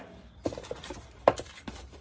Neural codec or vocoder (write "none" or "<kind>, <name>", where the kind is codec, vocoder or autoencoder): none